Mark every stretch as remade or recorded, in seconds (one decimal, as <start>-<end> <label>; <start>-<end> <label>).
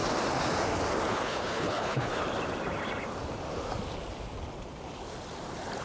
0.0-1.1 recorded; 1.1-2.2 remade; 2.2-5.8 recorded